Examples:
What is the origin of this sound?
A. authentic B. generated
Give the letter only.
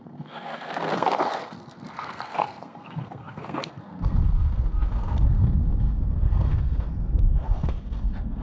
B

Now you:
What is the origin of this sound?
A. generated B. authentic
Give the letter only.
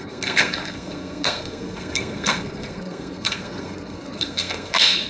A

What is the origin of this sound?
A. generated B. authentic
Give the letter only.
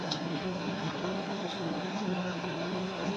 A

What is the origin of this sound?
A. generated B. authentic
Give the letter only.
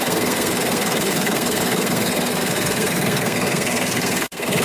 A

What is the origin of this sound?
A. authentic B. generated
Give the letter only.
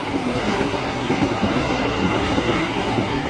B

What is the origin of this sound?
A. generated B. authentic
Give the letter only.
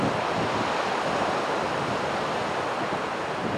B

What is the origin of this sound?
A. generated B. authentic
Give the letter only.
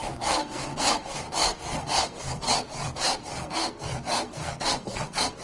A